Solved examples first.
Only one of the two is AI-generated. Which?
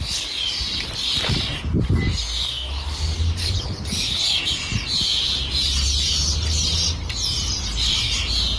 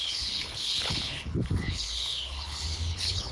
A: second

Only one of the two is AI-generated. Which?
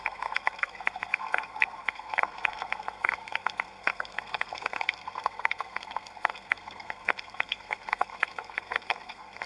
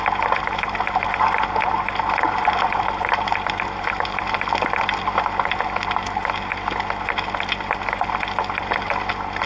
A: first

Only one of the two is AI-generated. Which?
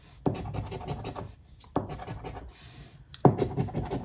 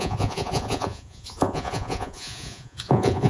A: second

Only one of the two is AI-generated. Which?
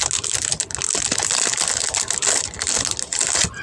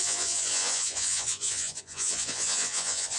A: second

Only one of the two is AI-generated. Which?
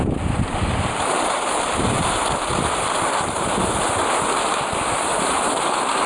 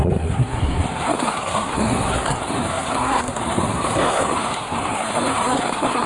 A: second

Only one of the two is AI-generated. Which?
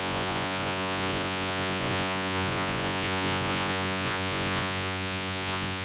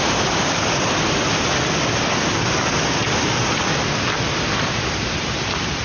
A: first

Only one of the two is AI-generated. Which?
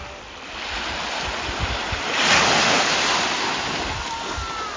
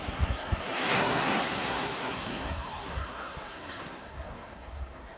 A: second